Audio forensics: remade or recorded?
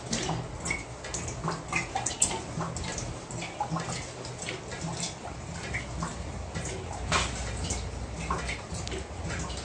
recorded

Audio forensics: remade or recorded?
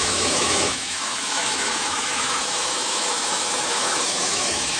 remade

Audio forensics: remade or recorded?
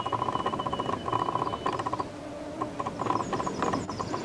recorded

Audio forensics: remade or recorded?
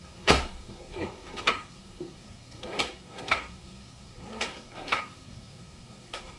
remade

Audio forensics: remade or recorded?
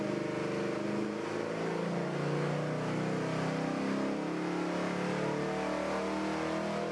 recorded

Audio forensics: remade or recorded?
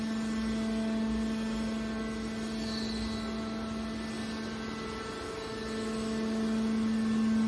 recorded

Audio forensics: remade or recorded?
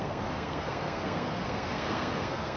remade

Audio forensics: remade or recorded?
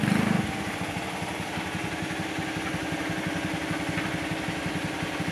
recorded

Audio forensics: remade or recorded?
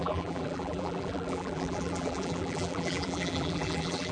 remade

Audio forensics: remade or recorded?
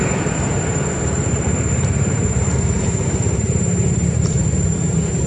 remade